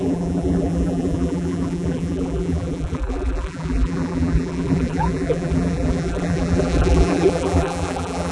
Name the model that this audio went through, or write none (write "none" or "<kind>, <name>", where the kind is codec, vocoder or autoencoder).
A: vocoder, BigVGAN v2